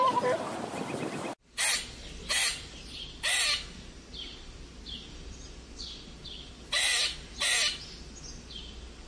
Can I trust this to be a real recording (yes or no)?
yes